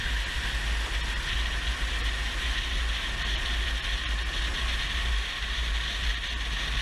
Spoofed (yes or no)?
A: no